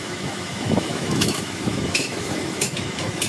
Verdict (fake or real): fake